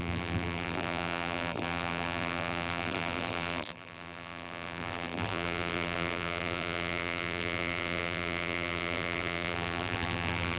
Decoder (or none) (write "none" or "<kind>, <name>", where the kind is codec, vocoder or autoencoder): vocoder, BigVGAN v2